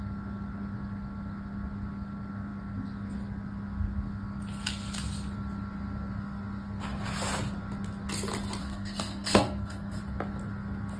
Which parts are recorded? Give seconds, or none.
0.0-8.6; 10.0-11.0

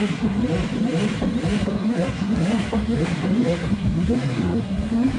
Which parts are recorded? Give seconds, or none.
0.4-1.6

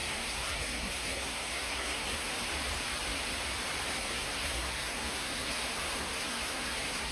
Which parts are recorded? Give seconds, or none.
2.3-3.9

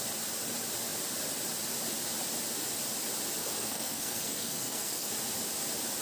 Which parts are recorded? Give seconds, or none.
0.0-3.4; 5.1-6.0

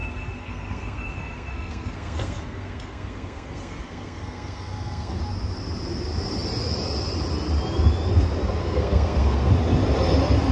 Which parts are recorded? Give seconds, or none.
5.2-8.6; 9.5-10.5

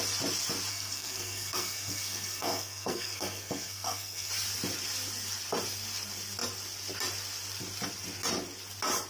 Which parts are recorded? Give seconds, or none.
0.0-0.7; 4.3-9.1

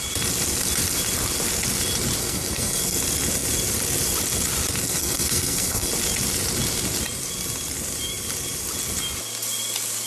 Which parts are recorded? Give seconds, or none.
0.0-2.2; 3.0-4.8; 5.9-10.1

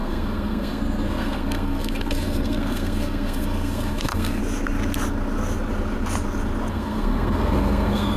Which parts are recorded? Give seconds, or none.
4.4-6.7